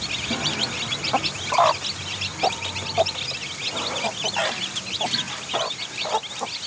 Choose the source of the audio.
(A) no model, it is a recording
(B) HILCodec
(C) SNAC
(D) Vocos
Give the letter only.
A